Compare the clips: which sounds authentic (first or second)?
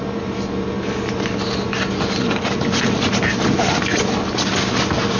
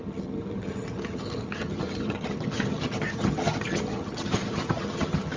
first